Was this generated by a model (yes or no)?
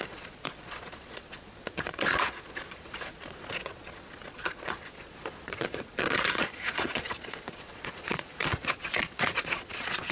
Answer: yes